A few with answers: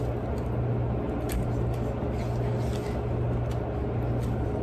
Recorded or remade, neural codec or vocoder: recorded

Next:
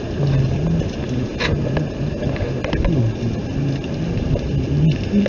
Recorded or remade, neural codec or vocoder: recorded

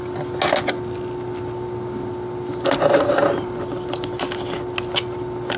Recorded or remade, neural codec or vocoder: recorded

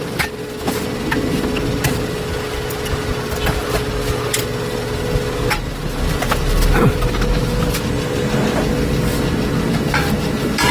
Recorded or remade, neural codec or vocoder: recorded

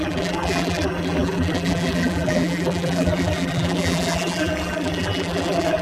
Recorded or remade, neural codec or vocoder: remade, vocoder, BigVGAN v2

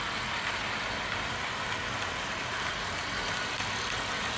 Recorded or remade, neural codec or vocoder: recorded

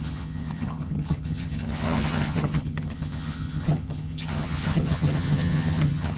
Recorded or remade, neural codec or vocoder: remade, vocoder, HiFi-GAN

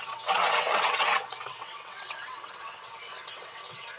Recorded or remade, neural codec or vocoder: remade, vocoder, WaveNeXt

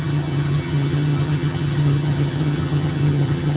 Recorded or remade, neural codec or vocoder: remade, vocoder, HiFi-GAN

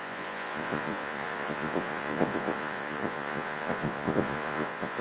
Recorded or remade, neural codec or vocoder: remade, vocoder, Vocos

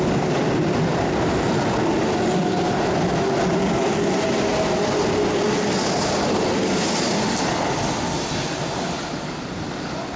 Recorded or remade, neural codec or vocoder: recorded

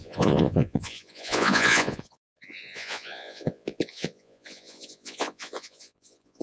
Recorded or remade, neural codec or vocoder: remade, vocoder, Vocos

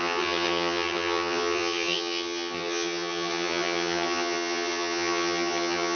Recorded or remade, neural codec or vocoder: remade, vocoder, HiFi-GAN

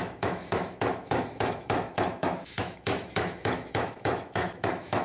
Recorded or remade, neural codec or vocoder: remade, autoencoder, DAC-VAE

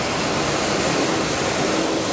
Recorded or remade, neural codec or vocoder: recorded